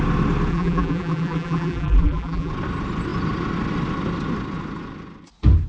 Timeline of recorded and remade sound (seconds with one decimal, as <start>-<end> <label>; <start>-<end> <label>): 0.0-0.5 recorded; 0.5-2.5 remade; 2.5-5.7 recorded